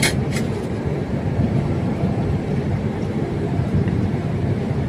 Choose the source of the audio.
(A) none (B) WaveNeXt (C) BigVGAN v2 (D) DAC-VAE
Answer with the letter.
C